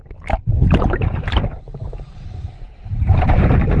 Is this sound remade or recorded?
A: remade